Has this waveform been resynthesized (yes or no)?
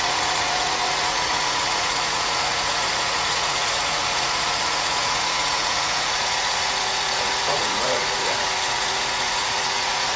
yes